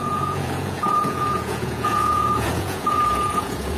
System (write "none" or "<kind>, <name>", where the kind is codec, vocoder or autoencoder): vocoder, Vocos